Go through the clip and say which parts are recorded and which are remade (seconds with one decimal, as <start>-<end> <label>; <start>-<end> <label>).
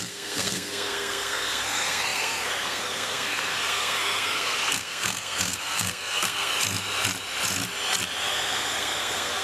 0.0-6.5 remade; 6.5-8.3 recorded; 8.3-9.4 remade